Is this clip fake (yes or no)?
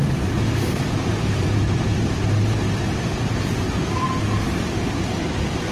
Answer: yes